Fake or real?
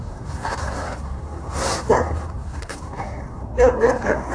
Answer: fake